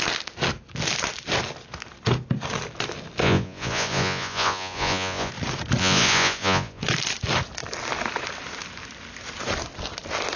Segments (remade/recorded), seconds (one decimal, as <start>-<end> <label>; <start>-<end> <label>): 0.0-3.2 recorded; 3.2-5.3 remade; 5.3-5.8 recorded; 5.8-6.8 remade; 6.8-10.4 recorded